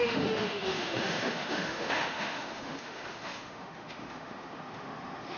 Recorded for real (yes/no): no